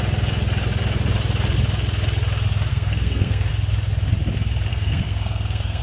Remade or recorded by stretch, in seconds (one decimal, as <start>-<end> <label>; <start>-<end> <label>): 0.0-2.7 recorded; 2.7-3.5 remade; 3.5-4.7 recorded; 4.7-5.8 remade